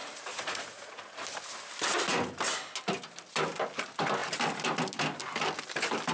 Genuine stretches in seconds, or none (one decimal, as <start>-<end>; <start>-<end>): 1.0-6.1